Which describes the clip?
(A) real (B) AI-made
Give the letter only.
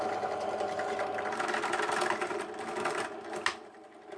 A